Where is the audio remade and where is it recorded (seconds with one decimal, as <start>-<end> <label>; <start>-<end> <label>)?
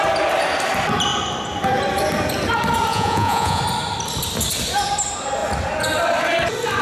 0.0-2.9 recorded; 2.9-3.6 remade; 3.6-6.8 recorded